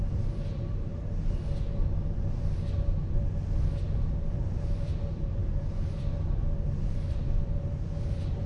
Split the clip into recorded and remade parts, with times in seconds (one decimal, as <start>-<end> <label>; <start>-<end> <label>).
0.0-0.9 remade; 0.9-3.8 recorded; 3.8-8.5 remade